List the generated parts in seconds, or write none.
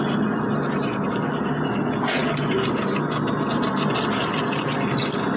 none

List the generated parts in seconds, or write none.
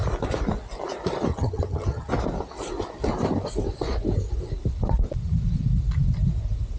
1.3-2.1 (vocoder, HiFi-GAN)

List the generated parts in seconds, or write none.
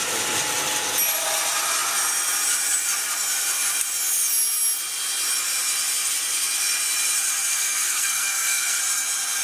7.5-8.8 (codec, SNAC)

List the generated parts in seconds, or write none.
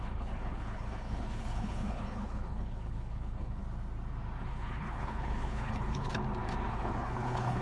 0.0-3.6 (codec, HILCodec); 4.4-6.2; 6.7-7.6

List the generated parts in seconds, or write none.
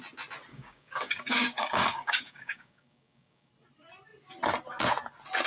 0.5-3.5 (codec, DAC)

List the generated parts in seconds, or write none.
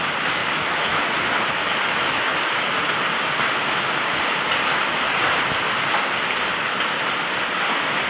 0.4-1.0 (autoencoder, DAC-VAE); 1.6-2.2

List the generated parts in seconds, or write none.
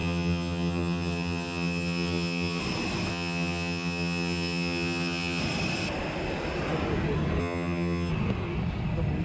0.0-2.6 (vocoder, HiFi-GAN); 3.1-5.4; 7.4-8.1